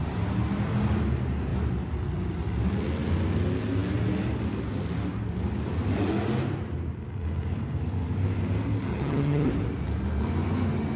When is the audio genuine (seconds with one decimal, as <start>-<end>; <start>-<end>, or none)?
0.0-8.9; 9.5-11.0